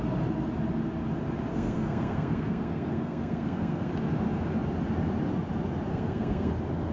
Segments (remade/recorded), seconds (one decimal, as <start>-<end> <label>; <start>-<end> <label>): 0.0-1.5 recorded; 1.5-3.9 remade; 3.9-5.9 recorded; 5.9-6.5 remade; 6.5-6.9 recorded